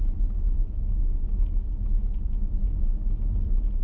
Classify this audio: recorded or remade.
recorded